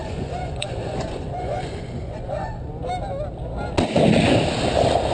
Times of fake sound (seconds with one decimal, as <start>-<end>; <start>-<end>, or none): 0.0-2.6